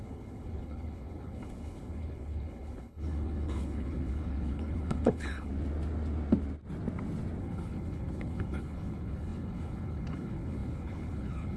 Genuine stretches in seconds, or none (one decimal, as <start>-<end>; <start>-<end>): 5.5-7.4